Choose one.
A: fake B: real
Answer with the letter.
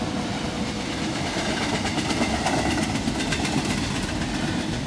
A